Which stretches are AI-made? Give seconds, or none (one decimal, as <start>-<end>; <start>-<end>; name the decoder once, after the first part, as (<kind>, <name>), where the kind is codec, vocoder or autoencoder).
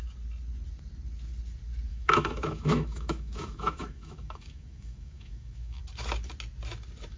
1.9-5.8 (autoencoder, DAC-VAE)